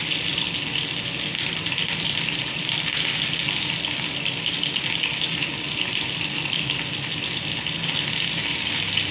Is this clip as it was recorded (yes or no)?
yes